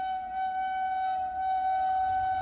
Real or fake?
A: real